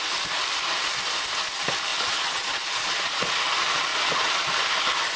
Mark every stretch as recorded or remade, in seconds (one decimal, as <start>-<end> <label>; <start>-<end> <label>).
0.0-1.9 recorded; 1.9-3.3 remade; 3.3-3.9 recorded; 3.9-4.5 remade; 4.5-5.2 recorded